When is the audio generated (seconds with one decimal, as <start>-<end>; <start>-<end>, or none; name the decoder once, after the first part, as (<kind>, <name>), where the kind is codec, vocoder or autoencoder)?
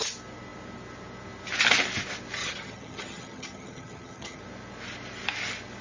2.4-4.4 (vocoder, HiFi-GAN)